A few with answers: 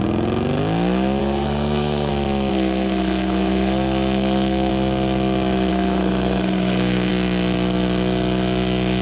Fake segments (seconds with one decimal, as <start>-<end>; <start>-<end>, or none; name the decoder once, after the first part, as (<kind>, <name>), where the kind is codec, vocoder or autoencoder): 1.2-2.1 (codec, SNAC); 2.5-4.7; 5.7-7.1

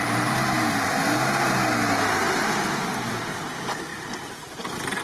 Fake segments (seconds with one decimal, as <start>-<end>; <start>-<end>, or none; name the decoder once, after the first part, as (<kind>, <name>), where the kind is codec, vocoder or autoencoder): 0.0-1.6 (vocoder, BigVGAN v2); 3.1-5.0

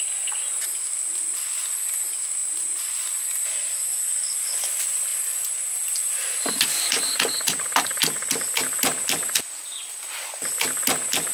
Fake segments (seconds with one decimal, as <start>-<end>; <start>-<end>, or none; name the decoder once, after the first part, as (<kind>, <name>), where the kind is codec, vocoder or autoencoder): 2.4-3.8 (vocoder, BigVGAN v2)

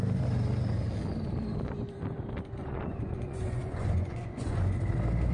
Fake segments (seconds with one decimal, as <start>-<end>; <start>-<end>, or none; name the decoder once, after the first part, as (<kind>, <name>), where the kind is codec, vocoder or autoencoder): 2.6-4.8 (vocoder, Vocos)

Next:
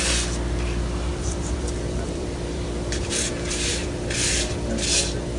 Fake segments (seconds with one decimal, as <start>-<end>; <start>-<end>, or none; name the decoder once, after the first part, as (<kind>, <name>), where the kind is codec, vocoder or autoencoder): 1.1-4.3 (vocoder, BigVGAN v2)

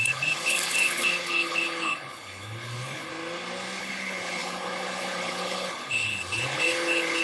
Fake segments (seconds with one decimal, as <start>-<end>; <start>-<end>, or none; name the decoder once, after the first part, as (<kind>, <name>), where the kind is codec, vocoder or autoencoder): 0.0-3.1 (codec, HILCodec); 3.8-7.2